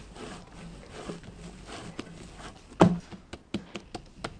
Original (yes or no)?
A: yes